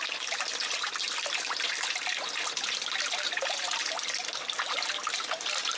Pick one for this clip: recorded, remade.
recorded